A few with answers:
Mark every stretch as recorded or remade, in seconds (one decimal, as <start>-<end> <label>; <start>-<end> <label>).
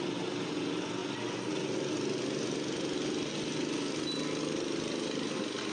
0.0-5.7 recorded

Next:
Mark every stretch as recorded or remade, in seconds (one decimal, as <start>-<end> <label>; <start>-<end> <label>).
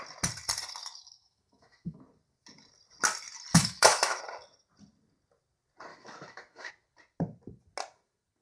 0.0-0.8 recorded; 0.8-2.0 remade; 2.0-3.5 recorded; 3.5-4.2 remade; 4.2-5.9 recorded; 5.9-6.7 remade; 6.7-8.4 recorded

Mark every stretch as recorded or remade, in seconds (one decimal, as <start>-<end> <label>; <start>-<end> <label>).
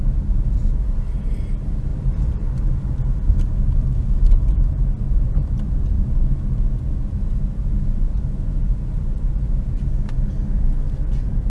0.0-1.9 recorded; 1.9-2.6 remade; 2.6-5.4 recorded; 5.4-6.1 remade; 6.1-11.5 recorded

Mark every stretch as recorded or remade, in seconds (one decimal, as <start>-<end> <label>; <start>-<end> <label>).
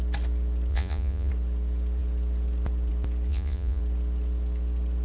0.0-0.7 recorded; 0.7-1.3 remade; 1.3-3.3 recorded; 3.3-3.8 remade; 3.8-5.0 recorded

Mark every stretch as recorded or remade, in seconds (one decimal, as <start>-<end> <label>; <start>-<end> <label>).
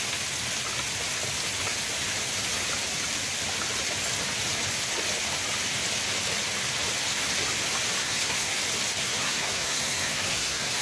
0.0-8.0 recorded; 8.0-8.6 remade; 8.6-9.0 recorded; 9.0-10.8 remade